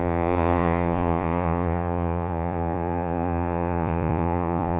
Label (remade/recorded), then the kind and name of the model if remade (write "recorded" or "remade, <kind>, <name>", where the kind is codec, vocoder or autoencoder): remade, vocoder, Vocos